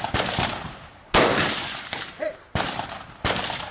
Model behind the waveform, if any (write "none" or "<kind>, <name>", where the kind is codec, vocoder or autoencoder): vocoder, BigVGAN v2